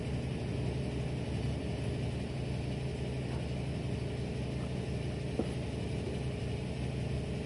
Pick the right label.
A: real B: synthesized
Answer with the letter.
A